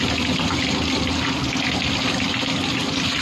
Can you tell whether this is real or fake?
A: real